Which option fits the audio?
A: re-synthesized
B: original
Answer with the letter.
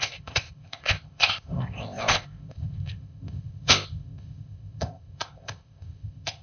A